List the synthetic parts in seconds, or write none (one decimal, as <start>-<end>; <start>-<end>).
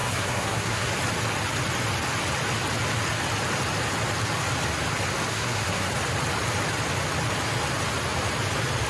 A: 0.0-0.9; 5.3-5.9